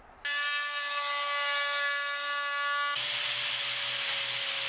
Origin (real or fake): real